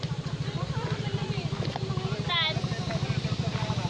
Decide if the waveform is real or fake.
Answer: real